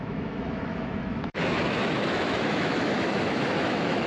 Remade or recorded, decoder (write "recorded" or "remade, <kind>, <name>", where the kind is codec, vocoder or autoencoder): remade, autoencoder, DAC-VAE